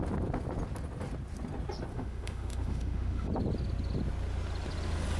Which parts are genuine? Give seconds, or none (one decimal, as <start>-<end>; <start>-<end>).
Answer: 0.0-1.9; 3.3-5.2